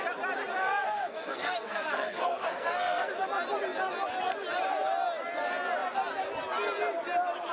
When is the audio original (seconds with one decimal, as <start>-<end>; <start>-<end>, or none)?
0.0-0.6; 3.1-7.5

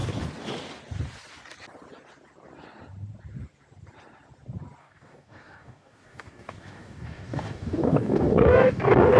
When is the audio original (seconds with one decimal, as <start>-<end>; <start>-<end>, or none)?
0.0-4.8

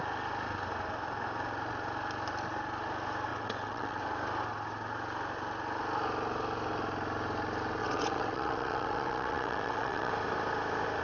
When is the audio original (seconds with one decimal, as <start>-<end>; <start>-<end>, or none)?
0.0-3.3; 4.0-7.8; 10.1-11.0

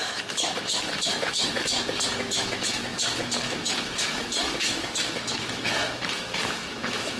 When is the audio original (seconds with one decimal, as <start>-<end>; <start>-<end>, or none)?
none